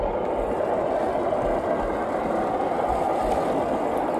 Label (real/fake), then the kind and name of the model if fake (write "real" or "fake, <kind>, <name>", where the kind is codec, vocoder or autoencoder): real